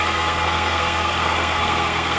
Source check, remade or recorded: remade